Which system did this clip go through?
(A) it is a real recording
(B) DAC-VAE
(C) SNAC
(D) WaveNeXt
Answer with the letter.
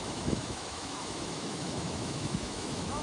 B